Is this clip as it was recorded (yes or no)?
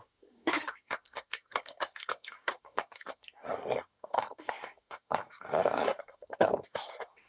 no